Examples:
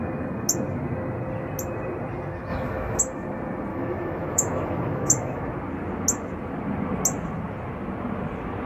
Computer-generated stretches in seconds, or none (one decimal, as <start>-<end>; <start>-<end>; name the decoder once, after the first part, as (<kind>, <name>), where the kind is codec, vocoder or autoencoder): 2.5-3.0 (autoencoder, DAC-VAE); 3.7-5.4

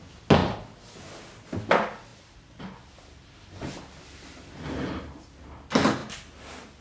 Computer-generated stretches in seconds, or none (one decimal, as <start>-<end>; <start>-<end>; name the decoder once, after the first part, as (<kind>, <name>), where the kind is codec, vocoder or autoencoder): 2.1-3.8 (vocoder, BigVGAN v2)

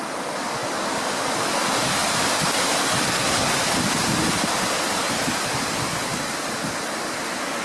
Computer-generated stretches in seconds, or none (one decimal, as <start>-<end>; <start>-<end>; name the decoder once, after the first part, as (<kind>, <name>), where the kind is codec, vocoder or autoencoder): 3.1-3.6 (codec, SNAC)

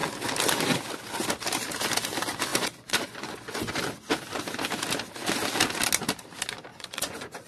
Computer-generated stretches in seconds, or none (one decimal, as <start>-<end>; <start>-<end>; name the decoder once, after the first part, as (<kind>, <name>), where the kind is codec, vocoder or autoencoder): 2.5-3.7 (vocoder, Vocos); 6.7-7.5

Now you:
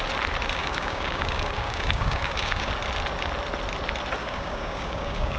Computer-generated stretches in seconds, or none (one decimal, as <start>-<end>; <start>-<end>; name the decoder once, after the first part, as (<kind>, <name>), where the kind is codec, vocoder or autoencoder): 0.6-2.7 (codec, DAC); 4.2-5.4